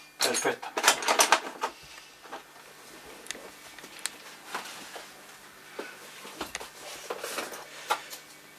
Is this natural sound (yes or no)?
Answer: yes